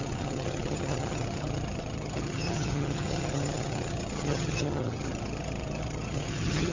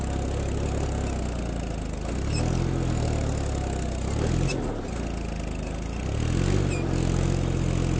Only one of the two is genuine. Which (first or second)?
second